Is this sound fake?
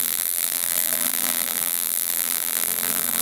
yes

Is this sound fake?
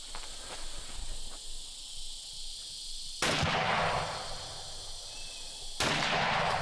no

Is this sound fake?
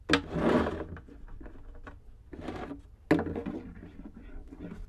no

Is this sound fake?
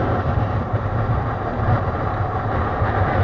yes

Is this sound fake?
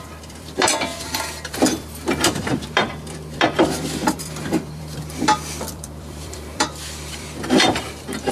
yes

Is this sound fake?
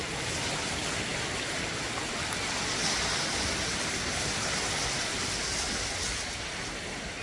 no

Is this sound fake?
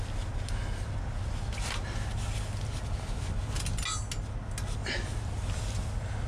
no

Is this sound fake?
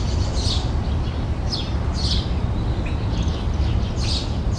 no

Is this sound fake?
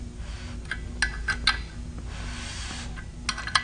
no